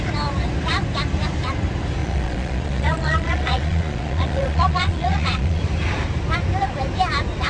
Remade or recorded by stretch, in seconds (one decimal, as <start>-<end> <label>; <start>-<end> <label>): 0.0-2.0 recorded; 2.0-5.6 remade; 5.6-7.5 recorded